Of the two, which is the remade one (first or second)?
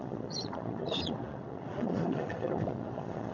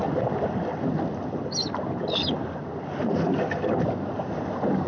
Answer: first